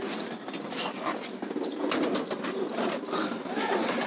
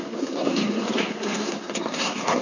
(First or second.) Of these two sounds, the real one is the first